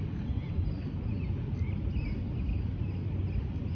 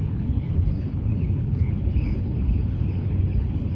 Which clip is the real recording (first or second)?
first